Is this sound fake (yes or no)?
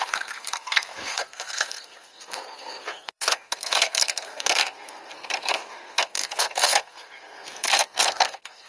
yes